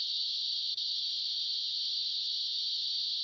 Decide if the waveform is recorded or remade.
recorded